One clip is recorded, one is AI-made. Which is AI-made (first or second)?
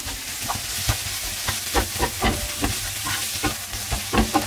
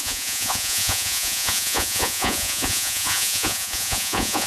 second